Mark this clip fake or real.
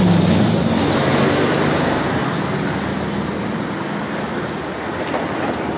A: real